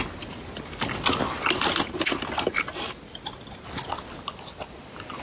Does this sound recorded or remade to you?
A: recorded